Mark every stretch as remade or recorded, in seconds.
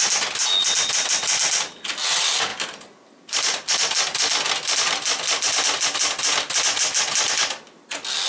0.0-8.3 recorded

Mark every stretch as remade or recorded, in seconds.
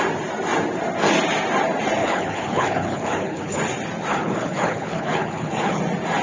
0.0-2.0 recorded; 2.0-3.6 remade; 3.6-4.1 recorded; 4.1-5.8 remade; 5.8-6.2 recorded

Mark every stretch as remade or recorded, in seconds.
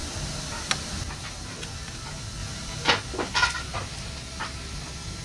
0.0-2.4 recorded; 2.4-2.9 remade; 2.9-5.2 recorded